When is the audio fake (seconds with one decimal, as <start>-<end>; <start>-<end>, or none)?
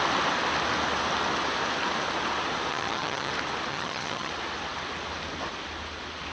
2.7-3.3; 3.7-4.3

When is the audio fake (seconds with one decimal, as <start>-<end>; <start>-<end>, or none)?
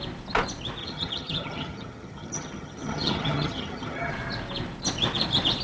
0.8-4.1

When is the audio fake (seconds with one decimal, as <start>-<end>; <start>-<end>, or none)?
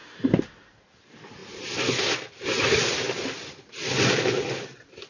none